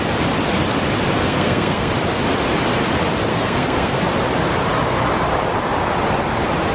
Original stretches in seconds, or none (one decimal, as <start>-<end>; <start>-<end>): 0.0-1.2; 1.9-3.3; 4.0-6.7